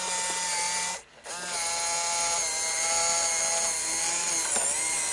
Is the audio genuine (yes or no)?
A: yes